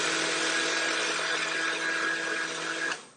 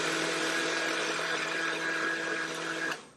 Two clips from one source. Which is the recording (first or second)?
first